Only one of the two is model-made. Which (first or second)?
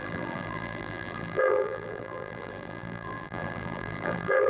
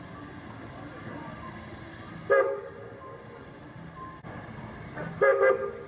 first